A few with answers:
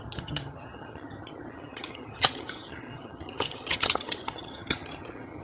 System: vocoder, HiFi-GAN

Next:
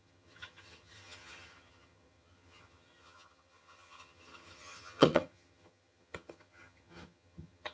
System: vocoder, HiFi-GAN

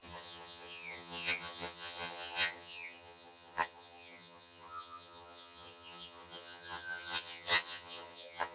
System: vocoder, HiFi-GAN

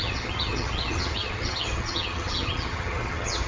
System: vocoder, HiFi-GAN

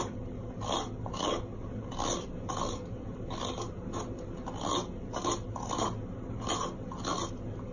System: none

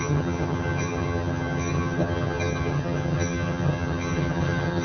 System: vocoder, HiFi-GAN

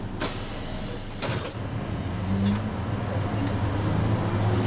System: none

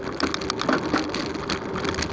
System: none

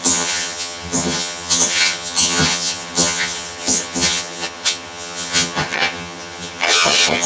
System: vocoder, HiFi-GAN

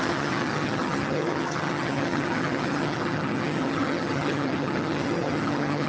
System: vocoder, HiFi-GAN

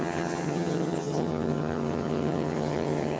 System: vocoder, HiFi-GAN